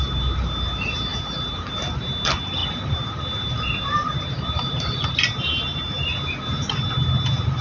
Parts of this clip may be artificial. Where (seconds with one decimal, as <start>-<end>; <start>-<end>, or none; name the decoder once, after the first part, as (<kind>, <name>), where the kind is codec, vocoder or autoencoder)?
2.6-5.1 (vocoder, BigVGAN v2)